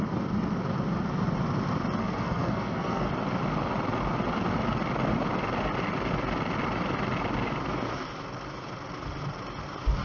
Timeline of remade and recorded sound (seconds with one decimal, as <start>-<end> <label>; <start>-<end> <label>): 0.0-2.0 recorded; 2.0-3.1 remade; 3.1-10.0 recorded